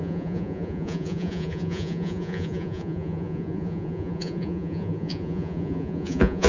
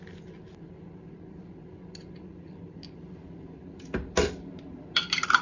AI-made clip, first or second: first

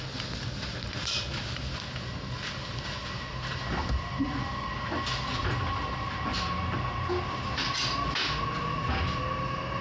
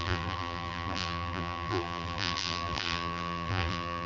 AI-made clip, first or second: second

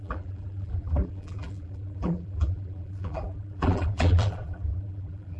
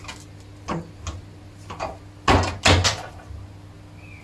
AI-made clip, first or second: first